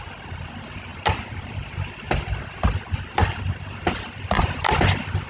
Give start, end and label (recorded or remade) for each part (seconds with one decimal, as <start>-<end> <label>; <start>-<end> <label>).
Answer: 0.0-0.9 recorded; 0.9-2.8 remade; 2.8-3.2 recorded; 3.2-4.6 remade; 4.6-5.3 recorded